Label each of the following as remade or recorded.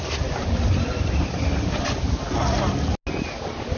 recorded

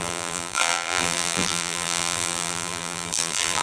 remade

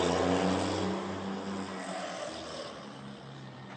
recorded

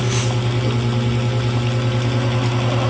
recorded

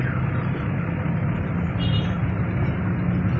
recorded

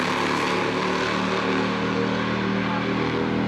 recorded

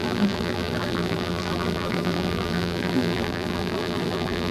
remade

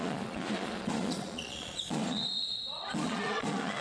remade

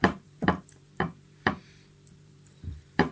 remade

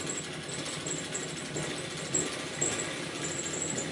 recorded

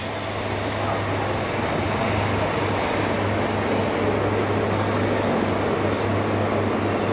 recorded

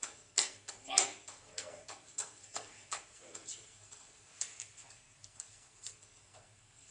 remade